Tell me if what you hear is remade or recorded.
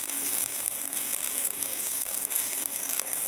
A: remade